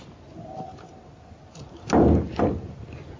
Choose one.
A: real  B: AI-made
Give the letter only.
A